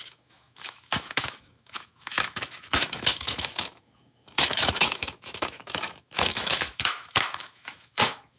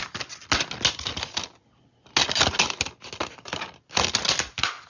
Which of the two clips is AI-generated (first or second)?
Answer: first